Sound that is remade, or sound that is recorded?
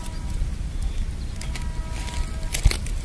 recorded